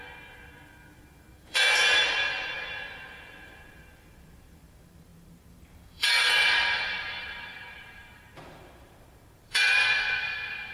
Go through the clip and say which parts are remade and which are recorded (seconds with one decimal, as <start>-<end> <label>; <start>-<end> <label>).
0.0-10.7 remade